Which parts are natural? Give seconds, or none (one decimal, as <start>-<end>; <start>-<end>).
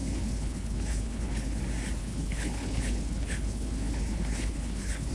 1.6-2.0